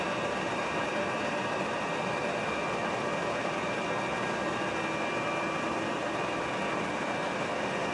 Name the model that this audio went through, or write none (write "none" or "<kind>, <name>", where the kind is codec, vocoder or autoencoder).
none